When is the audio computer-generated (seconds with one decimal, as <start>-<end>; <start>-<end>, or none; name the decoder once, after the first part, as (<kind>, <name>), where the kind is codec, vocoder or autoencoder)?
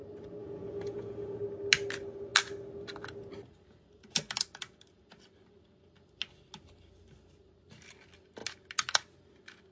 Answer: 0.4-1.4 (vocoder, Vocos)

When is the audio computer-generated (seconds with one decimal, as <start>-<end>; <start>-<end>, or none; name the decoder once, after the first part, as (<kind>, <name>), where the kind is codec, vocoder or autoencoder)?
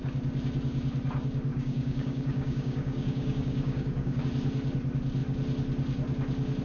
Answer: 1.5-4.2 (codec, DAC)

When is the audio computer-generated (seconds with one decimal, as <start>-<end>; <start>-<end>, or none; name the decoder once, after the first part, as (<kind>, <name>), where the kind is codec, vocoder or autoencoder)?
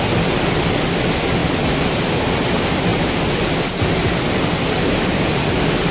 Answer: none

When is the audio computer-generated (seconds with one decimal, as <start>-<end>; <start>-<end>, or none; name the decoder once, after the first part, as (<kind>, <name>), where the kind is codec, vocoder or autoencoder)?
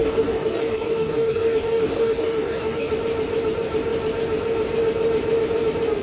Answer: 0.0-2.9 (codec, DAC)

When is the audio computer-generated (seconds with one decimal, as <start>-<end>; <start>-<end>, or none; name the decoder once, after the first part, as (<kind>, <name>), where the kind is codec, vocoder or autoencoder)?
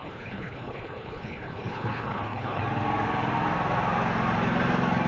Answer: 0.0-2.6 (codec, HILCodec)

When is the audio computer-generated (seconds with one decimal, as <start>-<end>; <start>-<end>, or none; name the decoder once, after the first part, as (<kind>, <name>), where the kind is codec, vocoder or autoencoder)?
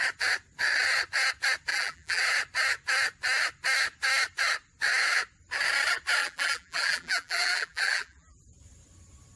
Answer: 1.7-2.2 (vocoder, BigVGAN v2); 6.2-8.4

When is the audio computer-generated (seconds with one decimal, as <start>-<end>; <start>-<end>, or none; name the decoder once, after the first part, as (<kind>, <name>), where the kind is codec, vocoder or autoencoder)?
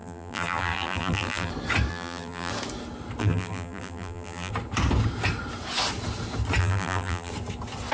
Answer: 0.0-1.5 (vocoder, BigVGAN v2); 1.9-2.5; 3.2-4.5; 6.6-7.3